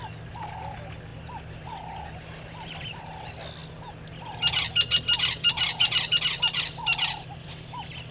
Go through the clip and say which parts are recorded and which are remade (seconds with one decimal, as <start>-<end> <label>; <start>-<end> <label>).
0.0-8.1 recorded